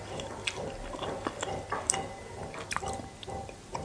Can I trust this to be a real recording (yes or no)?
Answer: yes